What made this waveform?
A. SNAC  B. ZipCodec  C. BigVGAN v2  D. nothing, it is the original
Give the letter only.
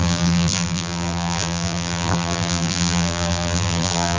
C